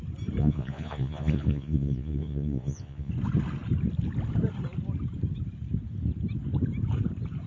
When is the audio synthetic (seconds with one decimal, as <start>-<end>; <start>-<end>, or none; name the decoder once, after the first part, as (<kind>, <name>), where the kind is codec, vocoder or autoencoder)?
0.4-3.1 (vocoder, Vocos)